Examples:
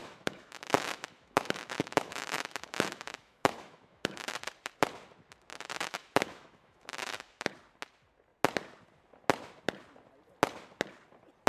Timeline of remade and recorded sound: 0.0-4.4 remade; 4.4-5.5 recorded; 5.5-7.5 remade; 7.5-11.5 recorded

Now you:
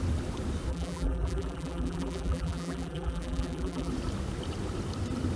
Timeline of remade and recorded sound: 0.0-0.7 recorded; 0.7-3.9 remade; 3.9-5.4 recorded